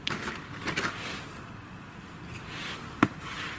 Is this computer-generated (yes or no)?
no